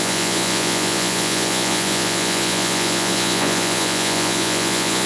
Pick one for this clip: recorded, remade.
remade